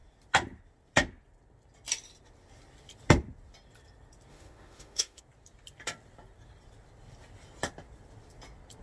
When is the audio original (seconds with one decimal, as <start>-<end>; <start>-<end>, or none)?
0.0-4.3; 5.2-8.8